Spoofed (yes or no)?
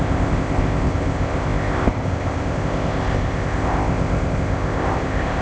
yes